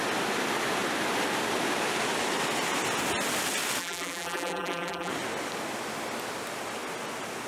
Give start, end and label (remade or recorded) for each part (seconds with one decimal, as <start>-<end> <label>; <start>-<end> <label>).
0.0-3.8 recorded; 3.8-5.1 remade; 5.1-7.5 recorded